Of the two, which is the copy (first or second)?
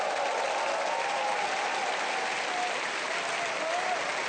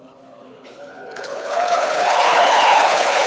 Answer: second